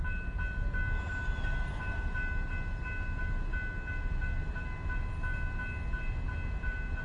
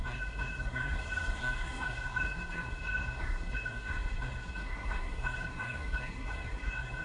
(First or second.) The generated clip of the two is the second